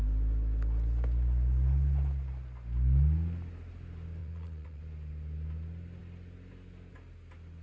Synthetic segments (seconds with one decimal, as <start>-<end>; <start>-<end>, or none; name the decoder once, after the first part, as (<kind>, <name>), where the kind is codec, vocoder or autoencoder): 4.2-4.8 (vocoder, Vocos)